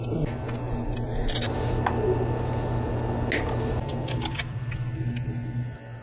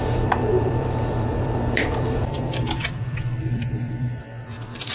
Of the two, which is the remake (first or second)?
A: second